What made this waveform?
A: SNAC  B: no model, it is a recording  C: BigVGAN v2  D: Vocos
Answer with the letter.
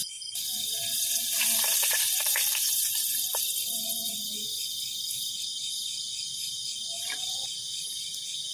C